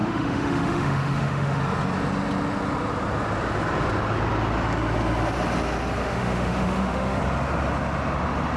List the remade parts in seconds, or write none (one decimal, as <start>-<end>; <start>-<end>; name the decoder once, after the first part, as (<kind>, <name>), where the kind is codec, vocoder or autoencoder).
0.0-1.6 (autoencoder, DAC-VAE); 6.0-7.2